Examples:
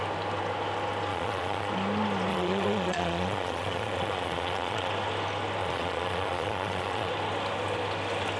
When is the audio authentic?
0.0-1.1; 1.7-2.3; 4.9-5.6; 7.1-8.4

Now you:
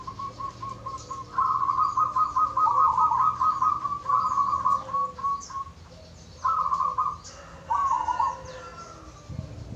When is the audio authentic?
0.0-1.9; 2.9-9.8

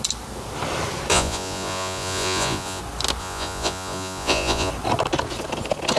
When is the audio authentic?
0.0-1.1; 2.8-3.2; 4.7-6.0

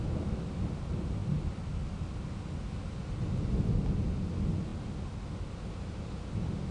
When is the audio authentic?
0.0-6.7